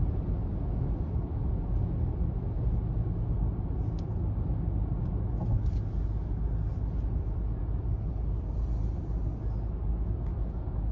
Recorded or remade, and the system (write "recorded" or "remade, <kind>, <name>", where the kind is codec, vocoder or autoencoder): recorded